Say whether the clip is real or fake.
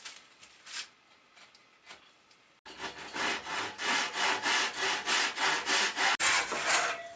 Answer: real